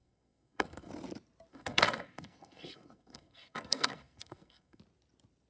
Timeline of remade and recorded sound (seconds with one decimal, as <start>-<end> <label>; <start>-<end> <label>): 0.0-0.9 remade; 0.9-1.5 recorded; 1.5-4.8 remade; 4.8-5.5 recorded